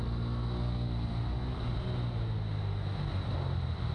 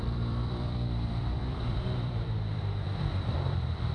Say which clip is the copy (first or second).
second